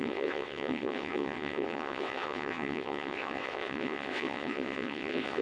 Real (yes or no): no